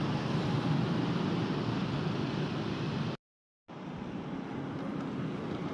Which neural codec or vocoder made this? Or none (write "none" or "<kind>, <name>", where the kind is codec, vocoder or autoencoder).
none